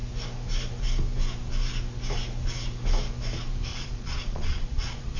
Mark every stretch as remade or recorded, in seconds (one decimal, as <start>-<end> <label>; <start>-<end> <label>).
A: 0.0-3.7 recorded; 3.7-5.2 remade